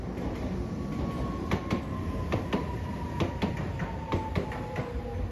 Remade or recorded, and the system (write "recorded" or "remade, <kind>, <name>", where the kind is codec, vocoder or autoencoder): recorded